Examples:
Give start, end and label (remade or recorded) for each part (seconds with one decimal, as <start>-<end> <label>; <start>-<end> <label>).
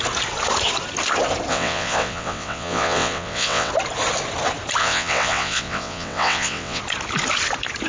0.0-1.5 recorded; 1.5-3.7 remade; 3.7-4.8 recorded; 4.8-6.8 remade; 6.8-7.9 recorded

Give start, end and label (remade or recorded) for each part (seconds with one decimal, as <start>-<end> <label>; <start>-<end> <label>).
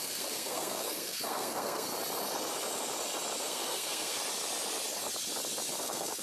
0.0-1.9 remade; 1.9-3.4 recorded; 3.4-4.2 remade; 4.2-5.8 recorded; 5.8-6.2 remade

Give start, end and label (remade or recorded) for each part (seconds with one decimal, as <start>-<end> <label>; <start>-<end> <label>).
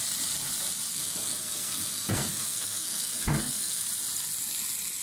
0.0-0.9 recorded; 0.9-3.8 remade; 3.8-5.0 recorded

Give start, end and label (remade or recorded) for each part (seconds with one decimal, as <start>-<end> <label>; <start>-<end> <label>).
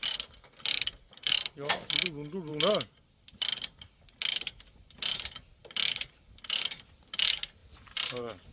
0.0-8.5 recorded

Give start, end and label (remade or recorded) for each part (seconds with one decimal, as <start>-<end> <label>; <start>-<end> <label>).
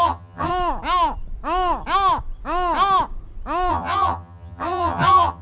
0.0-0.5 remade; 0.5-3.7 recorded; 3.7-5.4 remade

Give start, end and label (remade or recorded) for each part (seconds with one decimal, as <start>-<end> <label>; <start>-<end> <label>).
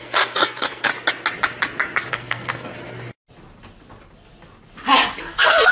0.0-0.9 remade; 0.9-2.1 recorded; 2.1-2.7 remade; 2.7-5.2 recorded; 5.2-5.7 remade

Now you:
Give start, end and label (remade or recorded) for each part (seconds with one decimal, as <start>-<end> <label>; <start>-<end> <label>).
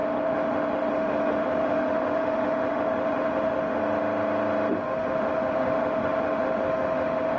0.0-3.8 remade; 3.8-4.8 recorded; 4.8-7.4 remade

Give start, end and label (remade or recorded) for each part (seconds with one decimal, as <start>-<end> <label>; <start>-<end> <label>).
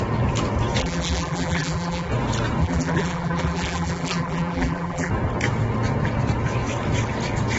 0.0-0.8 recorded; 0.8-2.1 remade; 2.1-2.6 recorded; 2.6-5.1 remade; 5.1-7.6 recorded